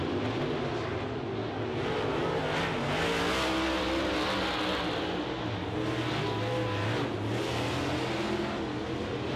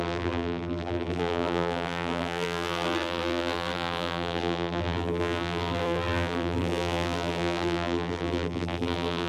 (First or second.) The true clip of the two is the first